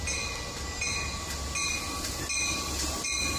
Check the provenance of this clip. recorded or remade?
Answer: recorded